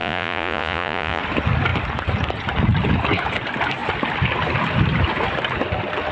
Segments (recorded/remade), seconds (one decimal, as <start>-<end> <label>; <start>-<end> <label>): 0.0-1.2 remade; 1.2-6.1 recorded